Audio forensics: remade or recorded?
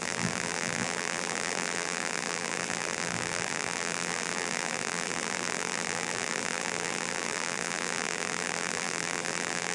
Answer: remade